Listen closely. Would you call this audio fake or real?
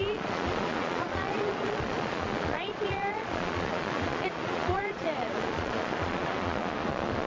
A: fake